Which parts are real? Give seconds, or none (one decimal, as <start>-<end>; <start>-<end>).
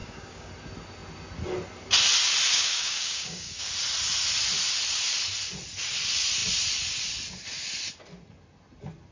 0.5-2.5; 3.7-9.1